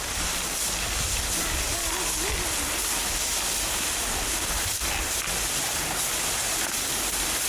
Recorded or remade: recorded